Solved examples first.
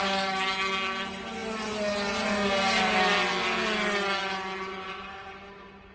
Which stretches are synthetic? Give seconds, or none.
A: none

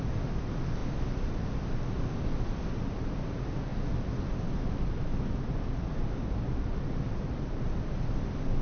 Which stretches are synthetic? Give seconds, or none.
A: none

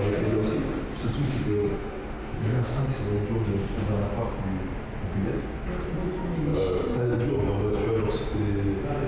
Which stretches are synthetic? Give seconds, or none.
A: 1.3-2.8 (autoencoder, DAC-VAE)

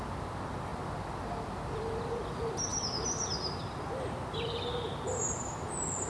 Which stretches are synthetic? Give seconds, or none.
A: none